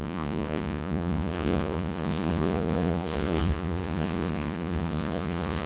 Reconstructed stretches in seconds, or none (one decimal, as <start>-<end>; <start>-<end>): 0.0-5.7